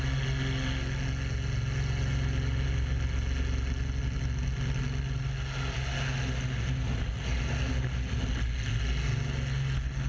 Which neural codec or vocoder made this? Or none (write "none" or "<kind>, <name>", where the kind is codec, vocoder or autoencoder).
none